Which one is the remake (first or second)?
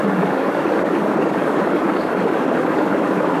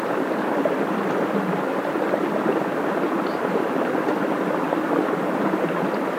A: first